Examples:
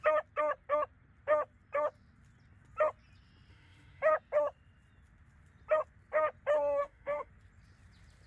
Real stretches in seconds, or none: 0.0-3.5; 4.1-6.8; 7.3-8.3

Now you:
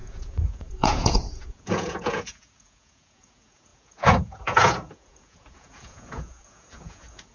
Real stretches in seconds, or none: none

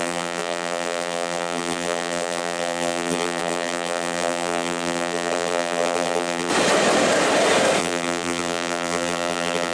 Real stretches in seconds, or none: 6.5-7.8